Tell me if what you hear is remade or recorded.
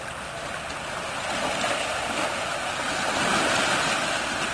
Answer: recorded